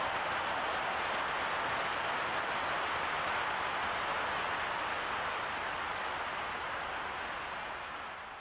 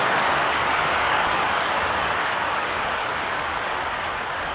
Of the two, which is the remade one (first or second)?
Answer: second